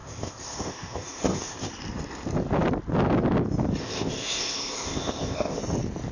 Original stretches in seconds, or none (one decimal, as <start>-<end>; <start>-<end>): 1.7-3.8; 5.6-6.1

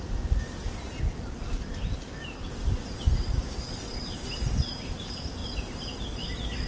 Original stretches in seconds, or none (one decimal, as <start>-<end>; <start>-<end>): 0.0-6.7